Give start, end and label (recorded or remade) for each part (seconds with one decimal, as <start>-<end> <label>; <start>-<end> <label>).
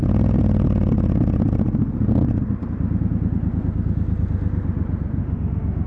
0.0-5.2 recorded; 5.2-5.9 remade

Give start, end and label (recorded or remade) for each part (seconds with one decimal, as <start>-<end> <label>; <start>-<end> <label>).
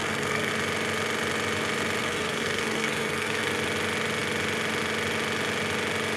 0.0-0.5 remade; 0.5-2.0 recorded; 2.0-3.5 remade; 3.5-6.2 recorded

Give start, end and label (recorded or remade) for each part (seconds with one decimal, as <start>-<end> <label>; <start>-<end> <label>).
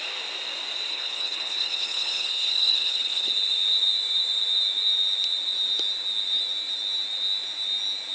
0.0-0.9 recorded; 0.9-3.3 remade; 3.3-8.1 recorded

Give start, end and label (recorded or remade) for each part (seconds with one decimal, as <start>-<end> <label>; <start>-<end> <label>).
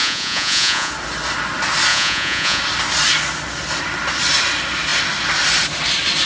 0.0-0.9 remade; 0.9-1.9 recorded; 1.9-2.6 remade; 2.6-6.3 recorded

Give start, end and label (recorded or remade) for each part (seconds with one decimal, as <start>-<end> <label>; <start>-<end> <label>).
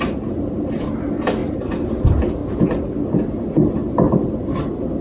0.0-1.4 remade; 1.4-2.0 recorded; 2.0-2.4 remade; 2.4-3.1 recorded; 3.1-5.0 remade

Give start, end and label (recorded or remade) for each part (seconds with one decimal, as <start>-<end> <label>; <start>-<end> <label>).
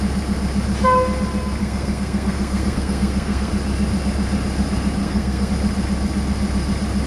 0.0-1.6 recorded; 1.6-3.5 remade; 3.5-5.0 recorded; 5.0-5.5 remade; 5.5-7.1 recorded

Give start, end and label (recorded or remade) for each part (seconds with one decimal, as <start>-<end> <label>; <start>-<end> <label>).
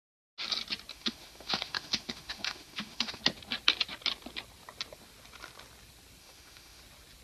0.0-0.9 recorded; 0.9-3.2 remade; 3.2-6.2 recorded; 6.2-6.8 remade; 6.8-7.2 recorded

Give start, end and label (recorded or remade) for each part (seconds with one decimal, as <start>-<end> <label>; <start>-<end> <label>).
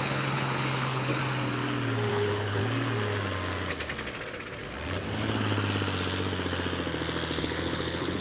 0.0-1.2 remade; 1.2-2.1 recorded; 2.1-2.6 remade; 2.6-7.4 recorded; 7.4-8.2 remade